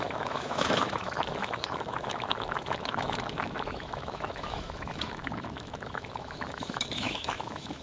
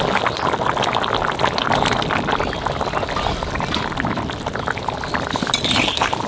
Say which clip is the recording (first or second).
second